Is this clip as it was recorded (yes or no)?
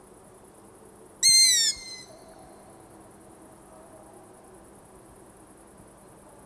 yes